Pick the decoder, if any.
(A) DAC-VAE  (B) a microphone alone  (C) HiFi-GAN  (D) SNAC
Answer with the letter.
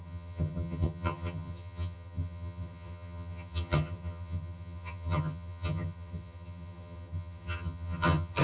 C